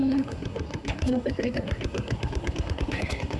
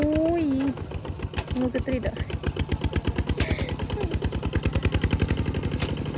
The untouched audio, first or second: second